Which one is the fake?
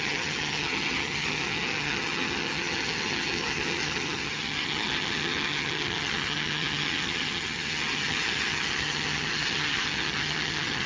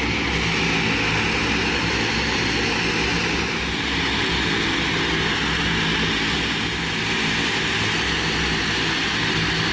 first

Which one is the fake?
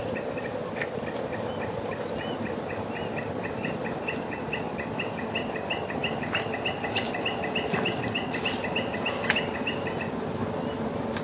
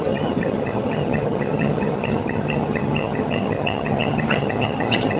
second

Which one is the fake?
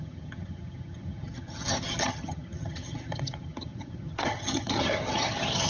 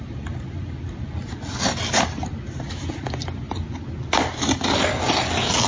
first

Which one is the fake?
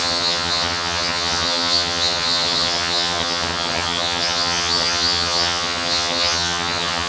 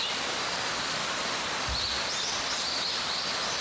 first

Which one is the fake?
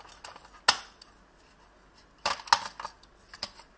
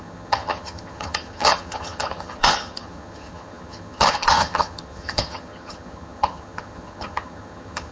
second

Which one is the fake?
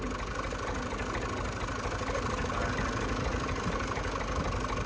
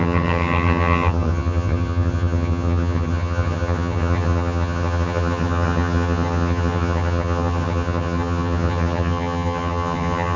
second